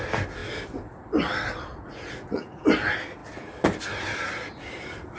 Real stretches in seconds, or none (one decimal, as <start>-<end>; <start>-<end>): 0.0-1.7; 2.6-5.2